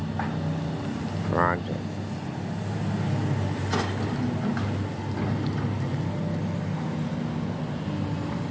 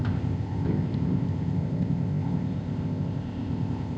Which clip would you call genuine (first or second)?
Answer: first